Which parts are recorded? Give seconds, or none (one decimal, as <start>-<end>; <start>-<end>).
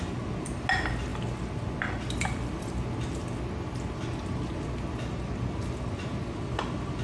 0.0-7.0